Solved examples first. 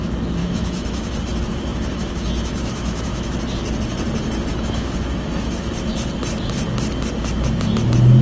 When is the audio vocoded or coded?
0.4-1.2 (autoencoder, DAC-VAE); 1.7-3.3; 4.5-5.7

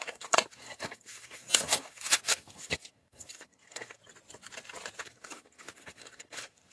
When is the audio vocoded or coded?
0.0-4.0 (codec, SNAC); 5.0-6.7

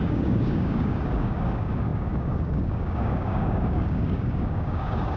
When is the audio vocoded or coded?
0.0-5.2 (codec, DAC)

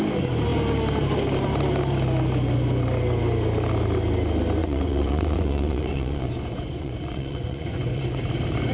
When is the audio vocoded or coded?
4.6-8.2 (vocoder, Vocos)

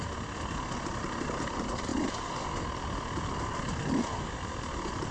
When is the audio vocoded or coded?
none

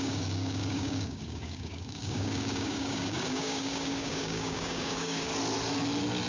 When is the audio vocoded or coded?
0.0-5.3 (codec, DAC)

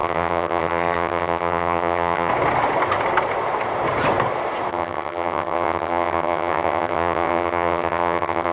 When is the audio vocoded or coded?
0.0-2.3 (vocoder, HiFi-GAN); 4.7-8.5